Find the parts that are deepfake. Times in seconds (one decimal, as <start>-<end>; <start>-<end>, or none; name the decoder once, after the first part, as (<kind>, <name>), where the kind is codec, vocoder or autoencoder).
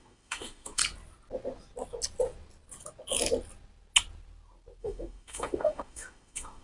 0.0-0.8 (autoencoder, DAC-VAE); 4.8-6.6